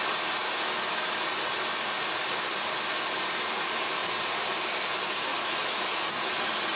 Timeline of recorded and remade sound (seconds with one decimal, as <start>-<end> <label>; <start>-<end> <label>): 0.0-0.4 recorded; 0.4-1.2 remade; 1.2-5.3 recorded; 5.3-6.1 remade; 6.1-6.8 recorded